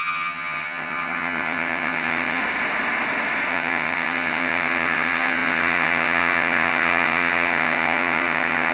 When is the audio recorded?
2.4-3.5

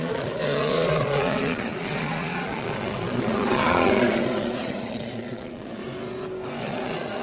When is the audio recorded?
5.8-6.6